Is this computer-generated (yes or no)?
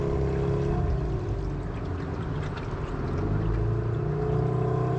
no